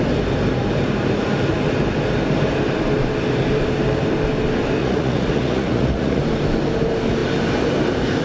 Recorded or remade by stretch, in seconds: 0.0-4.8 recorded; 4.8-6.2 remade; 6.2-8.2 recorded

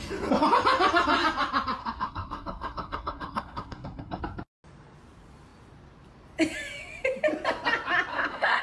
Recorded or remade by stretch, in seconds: 0.0-1.8 recorded; 1.8-4.2 remade; 4.2-8.1 recorded; 8.1-8.6 remade

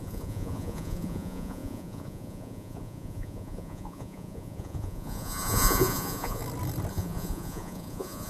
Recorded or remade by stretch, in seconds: 0.0-6.4 remade; 6.4-6.9 recorded; 6.9-8.3 remade

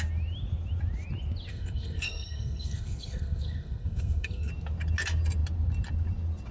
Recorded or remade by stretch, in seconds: 0.0-1.5 recorded; 1.5-4.5 remade; 4.5-6.5 recorded

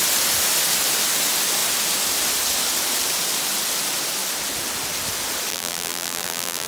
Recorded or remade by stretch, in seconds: 0.0-5.5 recorded; 5.5-6.7 remade

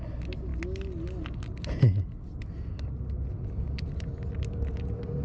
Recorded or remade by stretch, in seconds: 0.0-5.2 recorded